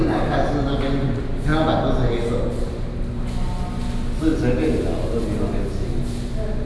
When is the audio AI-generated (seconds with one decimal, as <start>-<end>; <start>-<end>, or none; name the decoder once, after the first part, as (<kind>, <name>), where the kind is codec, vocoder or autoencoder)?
none